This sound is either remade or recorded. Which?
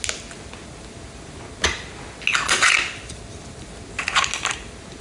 recorded